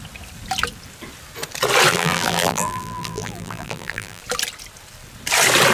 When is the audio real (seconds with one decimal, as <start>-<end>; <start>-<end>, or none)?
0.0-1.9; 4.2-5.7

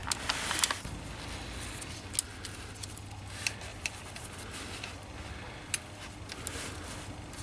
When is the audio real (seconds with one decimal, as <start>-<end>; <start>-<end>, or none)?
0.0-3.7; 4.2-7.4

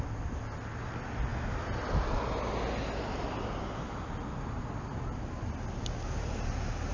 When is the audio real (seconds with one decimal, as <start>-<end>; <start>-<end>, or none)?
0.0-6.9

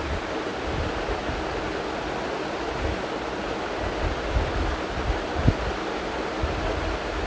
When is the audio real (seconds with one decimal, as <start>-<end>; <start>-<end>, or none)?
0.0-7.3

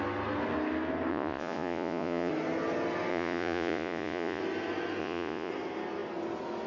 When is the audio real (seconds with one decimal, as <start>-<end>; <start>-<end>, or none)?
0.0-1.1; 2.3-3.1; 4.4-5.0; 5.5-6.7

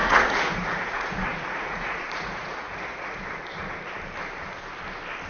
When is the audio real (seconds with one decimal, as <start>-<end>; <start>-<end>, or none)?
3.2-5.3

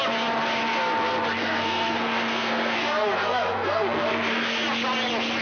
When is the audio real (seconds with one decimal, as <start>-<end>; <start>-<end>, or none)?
0.0-1.4; 4.6-5.4